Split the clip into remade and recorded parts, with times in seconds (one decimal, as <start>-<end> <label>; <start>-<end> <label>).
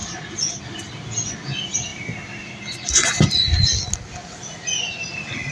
0.0-0.6 remade; 0.6-5.5 recorded